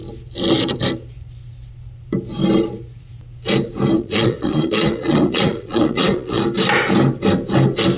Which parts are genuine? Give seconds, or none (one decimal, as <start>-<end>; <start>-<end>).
0.0-4.0; 6.4-8.0